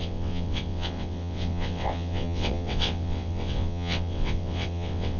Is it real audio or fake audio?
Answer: fake